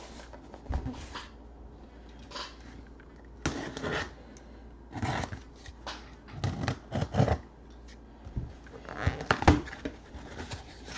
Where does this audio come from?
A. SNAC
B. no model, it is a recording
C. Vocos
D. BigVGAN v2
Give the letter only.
B